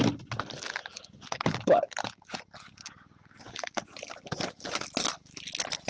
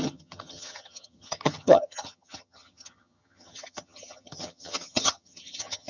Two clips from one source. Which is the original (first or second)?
first